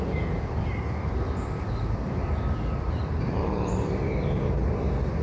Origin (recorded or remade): recorded